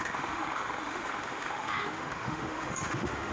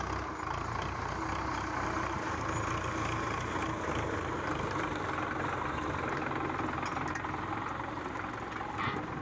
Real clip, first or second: second